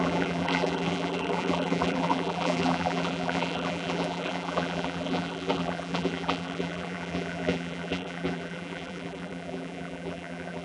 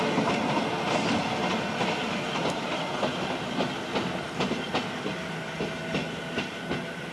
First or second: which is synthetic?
first